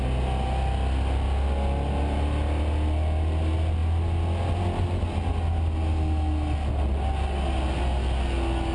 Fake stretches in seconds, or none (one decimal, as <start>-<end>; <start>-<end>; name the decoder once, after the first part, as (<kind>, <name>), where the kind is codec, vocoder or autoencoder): none